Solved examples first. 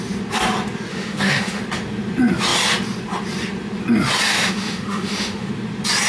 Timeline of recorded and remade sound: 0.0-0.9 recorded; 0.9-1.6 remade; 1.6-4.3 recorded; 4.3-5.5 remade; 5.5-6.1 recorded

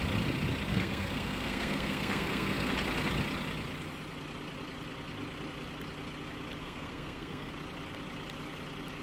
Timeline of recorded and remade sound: 0.0-0.7 recorded; 0.7-2.7 remade; 2.7-6.6 recorded; 6.6-7.5 remade; 7.5-9.0 recorded